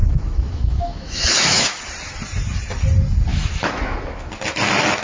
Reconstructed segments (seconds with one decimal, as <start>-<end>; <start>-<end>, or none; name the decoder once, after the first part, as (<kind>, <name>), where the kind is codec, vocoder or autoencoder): 0.0-1.8 (autoencoder, DAC-VAE); 3.3-4.3